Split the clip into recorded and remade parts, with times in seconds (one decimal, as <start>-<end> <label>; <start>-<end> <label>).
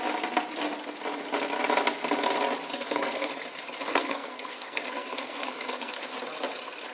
0.0-2.7 recorded; 2.7-3.3 remade; 3.3-3.9 recorded; 3.9-6.0 remade; 6.0-6.9 recorded